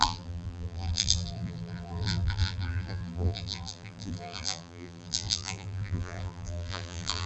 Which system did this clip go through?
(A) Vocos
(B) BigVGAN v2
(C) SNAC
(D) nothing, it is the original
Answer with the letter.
B